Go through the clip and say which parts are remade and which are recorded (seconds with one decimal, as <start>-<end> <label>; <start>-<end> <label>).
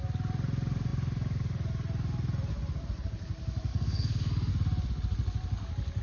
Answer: 0.0-3.7 recorded; 3.7-4.5 remade; 4.5-6.0 recorded